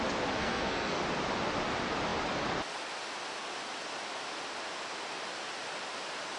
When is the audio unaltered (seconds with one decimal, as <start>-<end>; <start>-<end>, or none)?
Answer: 0.0-0.4; 1.0-6.4